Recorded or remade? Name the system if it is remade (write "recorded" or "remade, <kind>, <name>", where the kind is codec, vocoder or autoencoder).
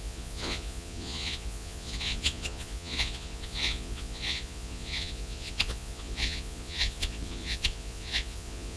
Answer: remade, vocoder, Vocos